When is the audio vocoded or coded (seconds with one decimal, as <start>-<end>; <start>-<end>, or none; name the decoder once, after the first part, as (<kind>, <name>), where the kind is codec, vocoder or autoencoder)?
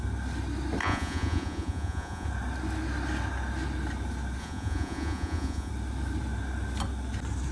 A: 0.8-2.3 (vocoder, Vocos); 4.4-5.7